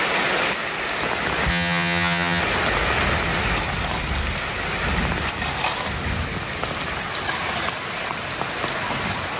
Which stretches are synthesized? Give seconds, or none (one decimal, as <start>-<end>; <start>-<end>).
1.5-2.4